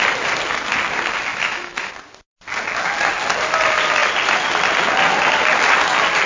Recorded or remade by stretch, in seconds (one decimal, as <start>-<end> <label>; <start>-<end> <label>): 0.0-1.3 recorded; 1.3-1.9 remade; 1.9-6.3 recorded